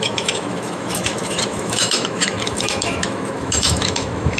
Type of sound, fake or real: fake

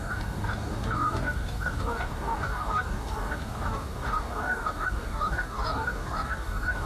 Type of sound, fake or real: fake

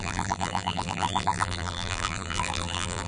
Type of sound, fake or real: fake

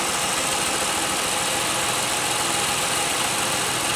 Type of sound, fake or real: real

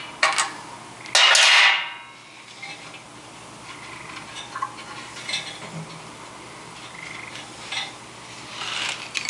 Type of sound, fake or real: real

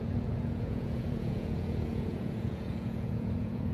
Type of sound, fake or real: fake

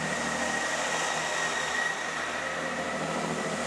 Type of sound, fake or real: real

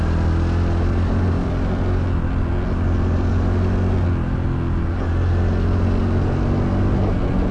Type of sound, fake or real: real